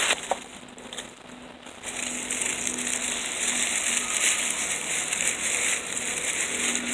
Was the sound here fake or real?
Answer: real